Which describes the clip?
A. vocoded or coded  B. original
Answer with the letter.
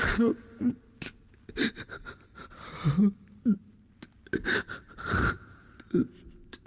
B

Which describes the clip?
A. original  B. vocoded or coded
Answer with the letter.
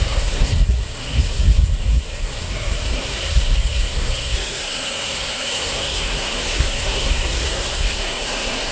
B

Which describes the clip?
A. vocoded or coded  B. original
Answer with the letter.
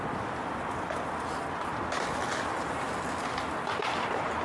B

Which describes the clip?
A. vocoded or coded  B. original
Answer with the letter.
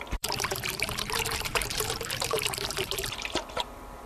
A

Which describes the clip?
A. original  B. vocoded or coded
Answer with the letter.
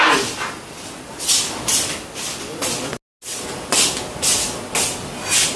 A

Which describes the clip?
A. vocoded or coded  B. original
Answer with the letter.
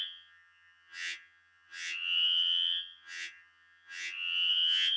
A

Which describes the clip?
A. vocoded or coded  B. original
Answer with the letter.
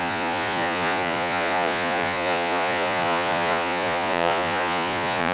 A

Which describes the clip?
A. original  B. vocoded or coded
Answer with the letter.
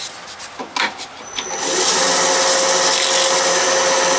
A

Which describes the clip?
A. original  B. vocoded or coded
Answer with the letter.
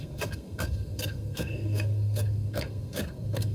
B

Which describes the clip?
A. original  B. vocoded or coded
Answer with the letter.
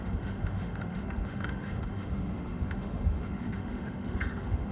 B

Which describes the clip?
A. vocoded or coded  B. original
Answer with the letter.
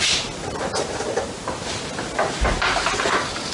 B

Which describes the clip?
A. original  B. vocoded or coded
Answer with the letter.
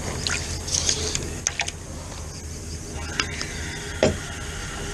A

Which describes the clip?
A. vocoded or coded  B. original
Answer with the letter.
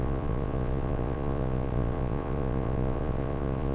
A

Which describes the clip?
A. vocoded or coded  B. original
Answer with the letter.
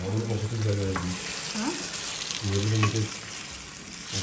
B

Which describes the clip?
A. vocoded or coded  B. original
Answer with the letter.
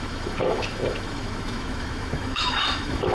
A